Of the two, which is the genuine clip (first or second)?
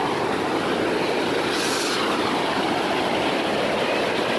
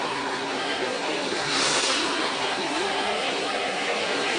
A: first